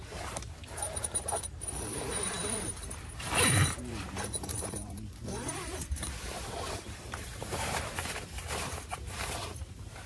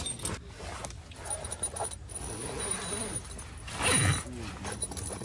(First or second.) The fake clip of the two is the first